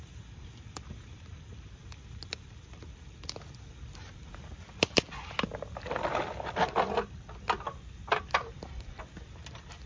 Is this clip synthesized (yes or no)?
no